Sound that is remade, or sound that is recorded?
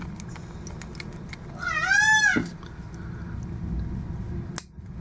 recorded